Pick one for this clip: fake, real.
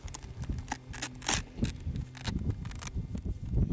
real